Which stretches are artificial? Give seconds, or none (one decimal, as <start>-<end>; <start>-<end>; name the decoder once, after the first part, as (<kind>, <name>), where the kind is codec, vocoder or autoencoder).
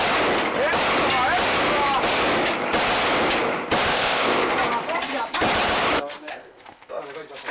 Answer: 3.9-4.5 (codec, ZipCodec); 6.3-7.0